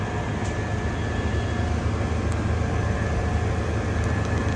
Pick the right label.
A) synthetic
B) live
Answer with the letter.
B